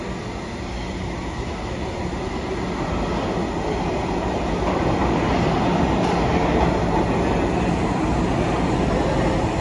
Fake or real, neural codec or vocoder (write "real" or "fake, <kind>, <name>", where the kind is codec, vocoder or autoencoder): real